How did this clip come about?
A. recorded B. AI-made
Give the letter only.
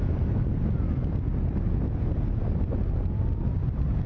A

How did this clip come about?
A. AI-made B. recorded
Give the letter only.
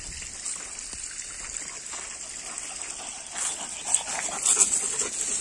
B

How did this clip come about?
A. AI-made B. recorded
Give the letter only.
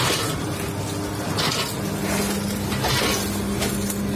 B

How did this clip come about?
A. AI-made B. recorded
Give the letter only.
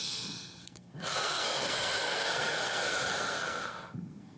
A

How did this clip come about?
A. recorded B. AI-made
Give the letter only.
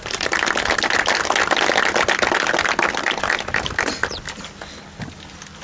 A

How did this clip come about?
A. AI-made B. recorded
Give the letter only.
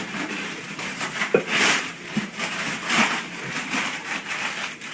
A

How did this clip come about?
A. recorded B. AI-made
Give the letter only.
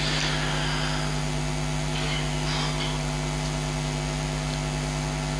A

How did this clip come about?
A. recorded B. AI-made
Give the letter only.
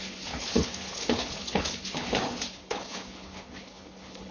B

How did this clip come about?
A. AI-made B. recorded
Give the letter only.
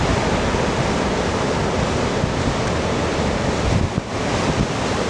B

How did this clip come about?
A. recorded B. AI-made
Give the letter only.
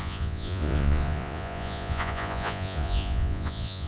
B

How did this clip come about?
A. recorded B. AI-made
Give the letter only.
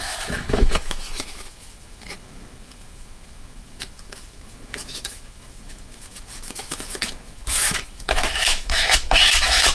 B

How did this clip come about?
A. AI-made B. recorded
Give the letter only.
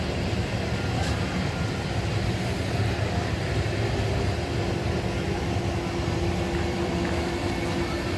B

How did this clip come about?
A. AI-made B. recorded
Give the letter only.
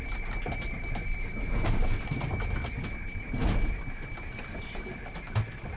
B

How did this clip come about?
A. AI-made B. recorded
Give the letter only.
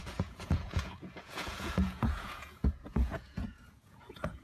A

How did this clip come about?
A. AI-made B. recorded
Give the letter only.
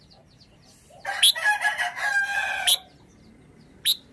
B